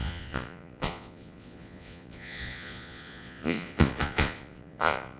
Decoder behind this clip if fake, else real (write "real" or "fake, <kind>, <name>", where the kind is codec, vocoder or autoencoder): fake, vocoder, Vocos